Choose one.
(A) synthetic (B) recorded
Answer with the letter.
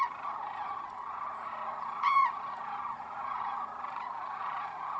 A